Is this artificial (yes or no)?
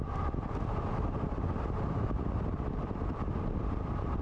yes